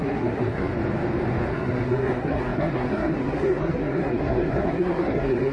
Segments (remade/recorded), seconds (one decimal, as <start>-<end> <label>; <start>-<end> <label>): 0.0-0.7 remade; 0.7-1.5 recorded; 1.5-5.5 remade